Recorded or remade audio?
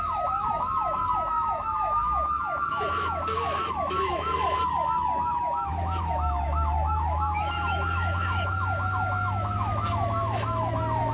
remade